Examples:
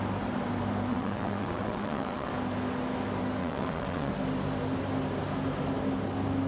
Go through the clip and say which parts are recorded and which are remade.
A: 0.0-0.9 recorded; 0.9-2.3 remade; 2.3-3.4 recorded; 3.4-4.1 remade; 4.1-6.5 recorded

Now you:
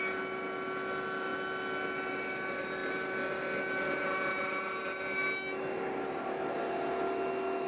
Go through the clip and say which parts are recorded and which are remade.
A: 0.0-7.7 recorded

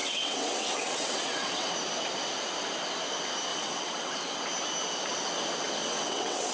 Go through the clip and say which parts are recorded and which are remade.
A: 0.0-1.7 remade; 1.7-3.5 recorded; 3.5-4.4 remade; 4.4-5.8 recorded; 5.8-6.5 remade

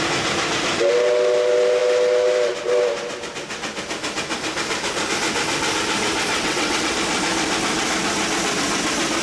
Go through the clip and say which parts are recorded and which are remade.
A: 0.0-6.3 recorded; 6.3-6.9 remade; 6.9-9.2 recorded

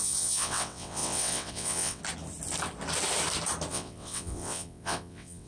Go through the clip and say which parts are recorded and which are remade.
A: 0.0-2.0 remade; 2.0-3.7 recorded; 3.7-5.5 remade

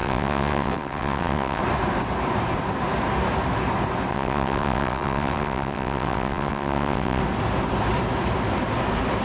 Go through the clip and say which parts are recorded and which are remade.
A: 0.0-1.6 remade; 1.6-4.1 recorded; 4.1-7.2 remade; 7.2-9.2 recorded

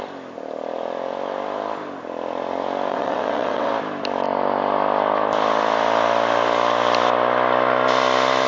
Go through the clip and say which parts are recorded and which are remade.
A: 0.0-2.9 recorded; 2.9-3.7 remade; 3.7-8.5 recorded

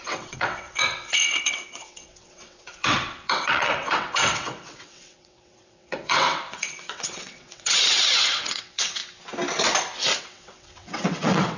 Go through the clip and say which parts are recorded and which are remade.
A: 0.0-9.0 remade; 9.0-10.2 recorded; 10.2-11.6 remade